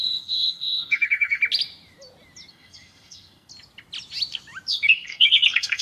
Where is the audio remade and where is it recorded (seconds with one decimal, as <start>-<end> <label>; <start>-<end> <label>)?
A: 0.0-1.4 remade; 1.4-2.5 recorded; 2.5-3.5 remade; 3.5-4.7 recorded; 4.7-5.8 remade